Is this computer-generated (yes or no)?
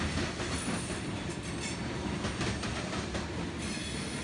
no